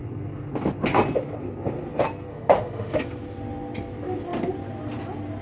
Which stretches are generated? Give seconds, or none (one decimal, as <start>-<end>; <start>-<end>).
2.3-3.0